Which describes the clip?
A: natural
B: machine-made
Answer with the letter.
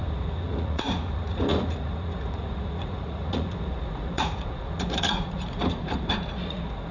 B